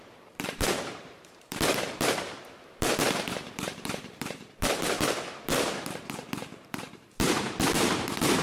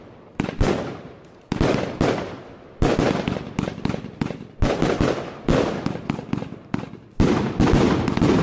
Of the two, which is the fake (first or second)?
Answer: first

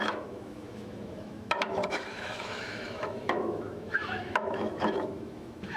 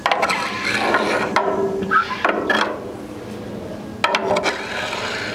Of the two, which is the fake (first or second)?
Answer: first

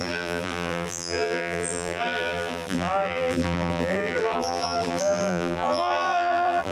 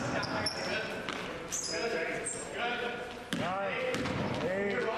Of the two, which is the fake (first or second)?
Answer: first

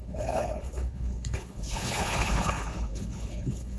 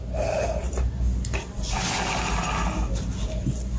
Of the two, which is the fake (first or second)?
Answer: first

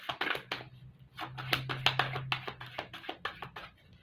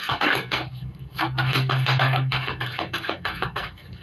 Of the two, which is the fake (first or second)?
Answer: second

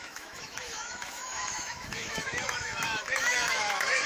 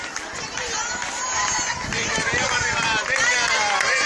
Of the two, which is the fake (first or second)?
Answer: first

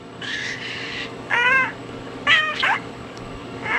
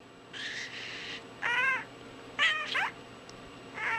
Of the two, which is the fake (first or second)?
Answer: first